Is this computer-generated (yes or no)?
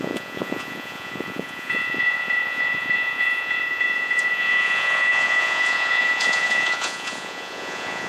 yes